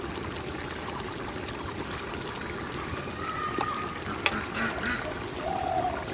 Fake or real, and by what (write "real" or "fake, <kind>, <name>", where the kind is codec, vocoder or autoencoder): real